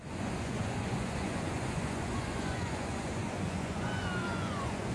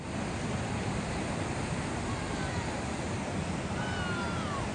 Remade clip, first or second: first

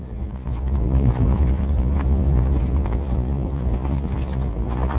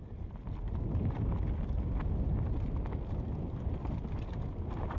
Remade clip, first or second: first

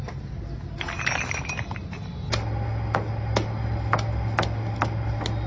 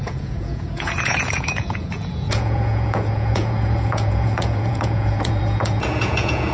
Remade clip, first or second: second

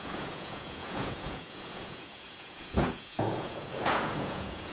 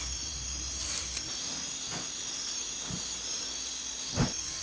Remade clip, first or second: first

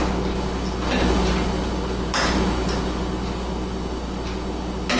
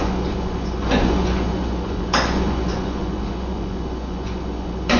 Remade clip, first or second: second